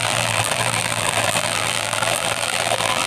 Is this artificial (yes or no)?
yes